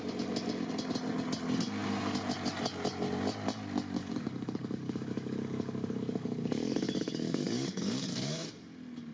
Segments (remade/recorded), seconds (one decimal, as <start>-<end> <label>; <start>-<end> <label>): 0.0-4.0 recorded; 4.0-8.5 remade; 8.5-9.1 recorded